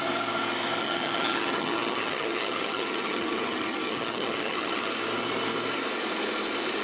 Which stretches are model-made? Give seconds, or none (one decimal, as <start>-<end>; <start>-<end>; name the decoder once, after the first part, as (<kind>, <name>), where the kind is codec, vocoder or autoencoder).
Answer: 0.8-4.9 (vocoder, HiFi-GAN)